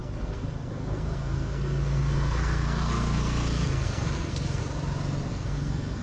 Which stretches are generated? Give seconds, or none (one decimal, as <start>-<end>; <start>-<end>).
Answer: 0.0-4.6; 5.3-6.0